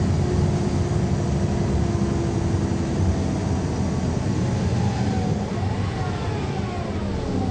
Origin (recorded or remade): recorded